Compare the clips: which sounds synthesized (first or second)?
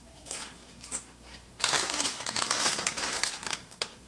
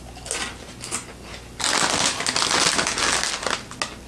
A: first